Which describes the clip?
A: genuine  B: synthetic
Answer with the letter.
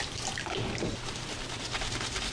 A